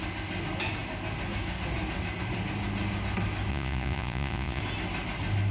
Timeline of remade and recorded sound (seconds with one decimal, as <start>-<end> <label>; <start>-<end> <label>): 0.0-3.5 recorded; 3.5-4.6 remade; 4.6-5.5 recorded